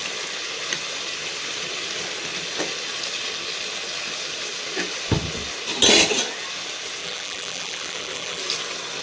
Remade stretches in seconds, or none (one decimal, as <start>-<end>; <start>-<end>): 7.0-8.4